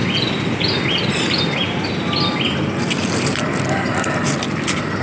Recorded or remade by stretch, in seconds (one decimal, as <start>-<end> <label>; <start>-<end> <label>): 0.0-1.4 remade; 1.4-5.0 recorded